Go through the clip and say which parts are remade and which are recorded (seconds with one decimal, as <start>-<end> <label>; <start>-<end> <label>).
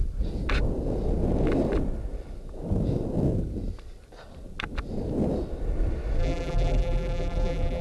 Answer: 0.0-6.2 recorded; 6.2-7.8 remade